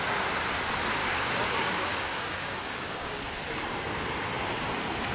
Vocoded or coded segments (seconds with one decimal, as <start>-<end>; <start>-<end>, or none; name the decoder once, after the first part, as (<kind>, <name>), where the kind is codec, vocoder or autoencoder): 1.0-3.2 (codec, DAC)